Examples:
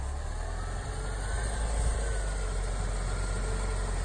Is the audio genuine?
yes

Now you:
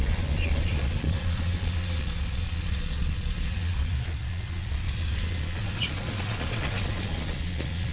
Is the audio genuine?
no